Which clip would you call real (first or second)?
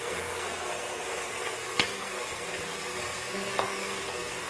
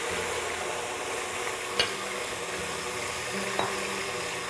second